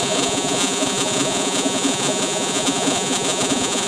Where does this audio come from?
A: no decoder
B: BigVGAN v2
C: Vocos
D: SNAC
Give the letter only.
C